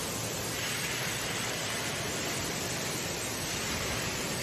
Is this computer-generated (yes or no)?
yes